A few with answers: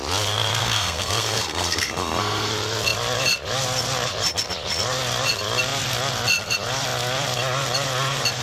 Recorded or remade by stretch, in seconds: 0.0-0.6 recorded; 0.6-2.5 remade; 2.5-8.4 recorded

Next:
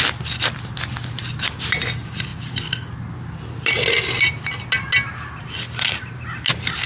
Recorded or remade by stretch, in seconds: 0.0-6.9 recorded